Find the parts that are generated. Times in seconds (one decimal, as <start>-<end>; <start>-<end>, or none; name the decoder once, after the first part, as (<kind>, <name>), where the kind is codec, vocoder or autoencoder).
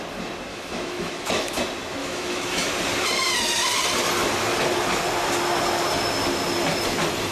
0.5-1.6 (autoencoder, DAC-VAE); 2.0-2.7